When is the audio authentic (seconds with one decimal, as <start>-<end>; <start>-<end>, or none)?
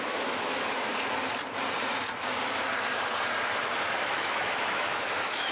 0.9-4.2